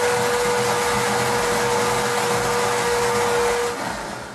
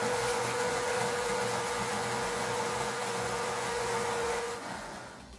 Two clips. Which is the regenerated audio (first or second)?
second